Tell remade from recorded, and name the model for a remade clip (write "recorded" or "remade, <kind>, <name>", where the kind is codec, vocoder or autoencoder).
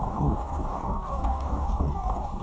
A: remade, codec, DAC